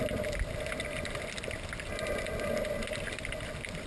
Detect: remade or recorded recorded